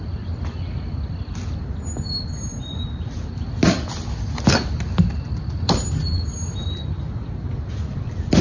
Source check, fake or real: real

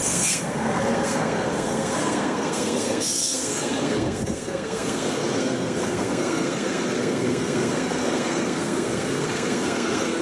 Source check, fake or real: fake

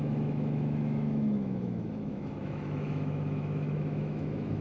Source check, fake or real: fake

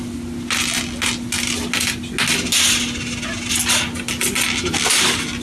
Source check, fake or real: real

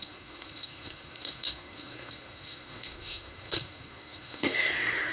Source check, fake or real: fake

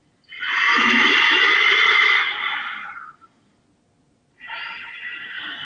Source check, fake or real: real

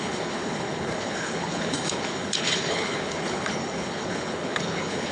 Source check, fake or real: fake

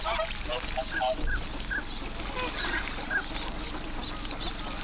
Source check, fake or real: real